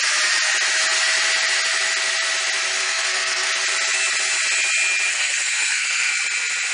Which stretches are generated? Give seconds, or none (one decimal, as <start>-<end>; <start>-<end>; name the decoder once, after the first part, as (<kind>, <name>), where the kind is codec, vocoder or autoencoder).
2.8-3.5 (codec, SNAC); 5.1-6.1